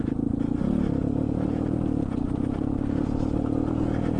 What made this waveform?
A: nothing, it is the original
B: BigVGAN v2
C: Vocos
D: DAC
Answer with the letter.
A